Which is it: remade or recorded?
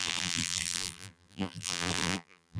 remade